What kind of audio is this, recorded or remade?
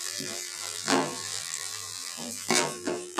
remade